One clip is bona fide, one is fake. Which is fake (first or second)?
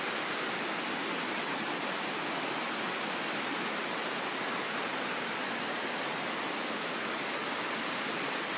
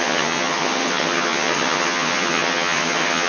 second